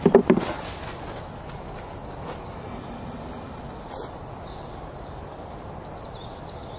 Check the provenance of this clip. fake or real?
real